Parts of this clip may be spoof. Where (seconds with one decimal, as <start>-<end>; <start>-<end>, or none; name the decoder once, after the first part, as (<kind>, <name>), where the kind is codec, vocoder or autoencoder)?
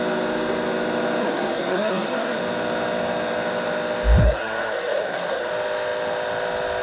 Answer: 1.2-2.4 (codec, SNAC); 4.2-5.5